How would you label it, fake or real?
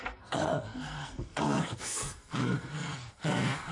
fake